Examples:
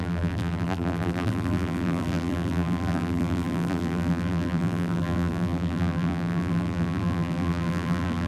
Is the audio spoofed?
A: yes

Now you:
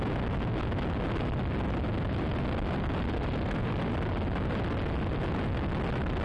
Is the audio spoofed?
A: no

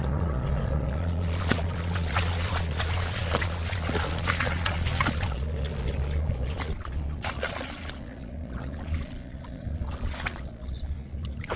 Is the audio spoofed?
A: yes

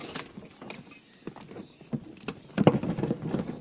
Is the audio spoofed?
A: no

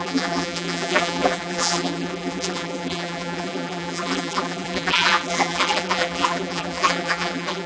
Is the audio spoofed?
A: yes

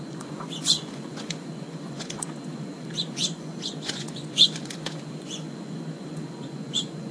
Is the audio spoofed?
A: yes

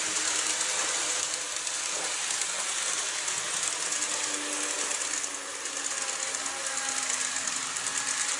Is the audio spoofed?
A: no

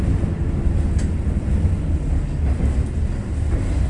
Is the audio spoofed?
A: no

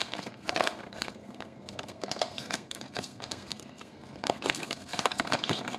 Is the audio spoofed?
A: yes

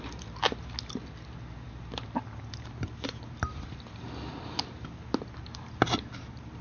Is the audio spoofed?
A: no